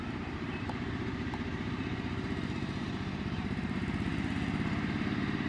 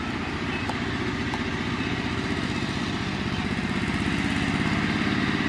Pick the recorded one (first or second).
second